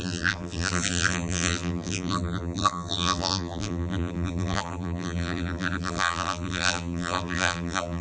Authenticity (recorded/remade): remade